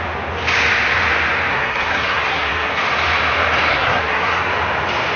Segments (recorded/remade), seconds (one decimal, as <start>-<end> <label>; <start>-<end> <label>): 0.0-1.5 recorded; 1.5-2.8 remade; 2.8-3.7 recorded; 3.7-4.5 remade; 4.5-5.2 recorded